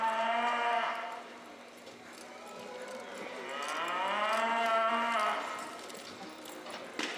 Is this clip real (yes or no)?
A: yes